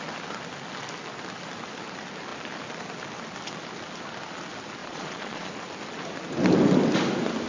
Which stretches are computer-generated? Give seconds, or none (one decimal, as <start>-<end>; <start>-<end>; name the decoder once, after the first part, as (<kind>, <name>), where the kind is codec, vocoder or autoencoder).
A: 4.8-5.5 (vocoder, Vocos)